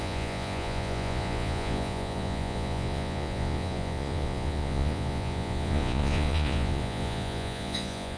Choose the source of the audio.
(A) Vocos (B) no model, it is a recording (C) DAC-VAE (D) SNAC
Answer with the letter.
A